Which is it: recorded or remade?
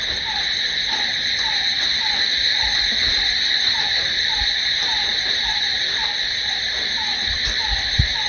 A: recorded